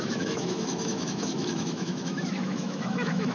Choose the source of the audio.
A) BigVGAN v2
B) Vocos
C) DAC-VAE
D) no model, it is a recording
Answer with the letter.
C